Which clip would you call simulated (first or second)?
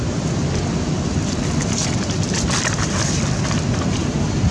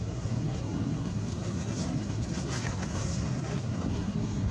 second